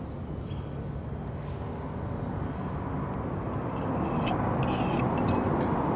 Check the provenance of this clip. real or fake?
real